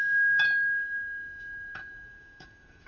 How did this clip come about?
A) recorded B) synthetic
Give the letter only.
B